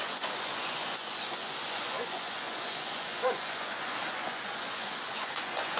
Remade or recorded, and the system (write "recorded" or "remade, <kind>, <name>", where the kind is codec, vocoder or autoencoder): remade, vocoder, Vocos